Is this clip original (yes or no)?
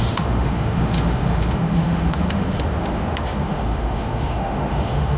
no